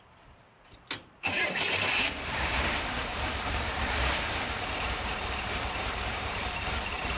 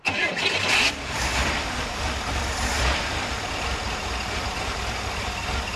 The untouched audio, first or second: second